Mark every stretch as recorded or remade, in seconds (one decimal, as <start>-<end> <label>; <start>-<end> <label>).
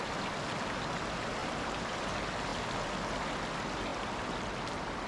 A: 0.0-1.4 recorded; 1.4-2.0 remade; 2.0-5.1 recorded